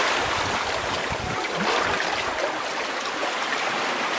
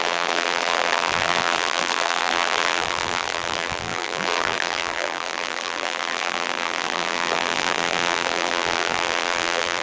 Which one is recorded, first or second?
first